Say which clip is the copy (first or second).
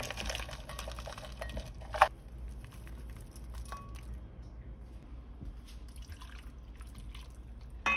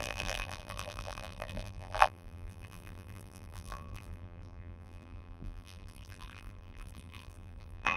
second